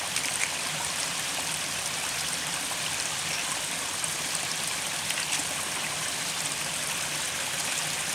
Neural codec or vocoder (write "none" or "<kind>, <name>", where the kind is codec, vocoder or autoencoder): none